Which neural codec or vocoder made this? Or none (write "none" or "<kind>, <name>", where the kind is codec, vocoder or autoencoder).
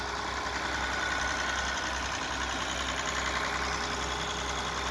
none